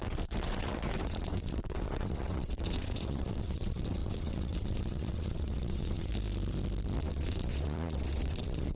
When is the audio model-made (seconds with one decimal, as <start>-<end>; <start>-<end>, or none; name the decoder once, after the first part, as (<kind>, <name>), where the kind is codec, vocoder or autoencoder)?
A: 0.0-6.1 (vocoder, WaveNeXt); 7.0-8.8